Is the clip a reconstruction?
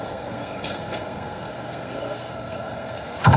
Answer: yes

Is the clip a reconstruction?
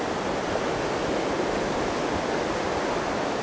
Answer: no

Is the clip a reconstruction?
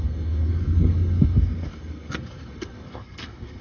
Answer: yes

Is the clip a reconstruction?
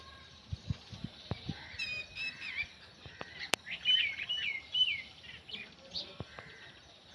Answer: yes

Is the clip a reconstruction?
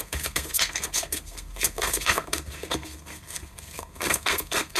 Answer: yes